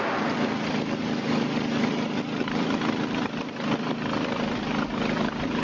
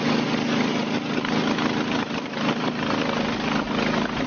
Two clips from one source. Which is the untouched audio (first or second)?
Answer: second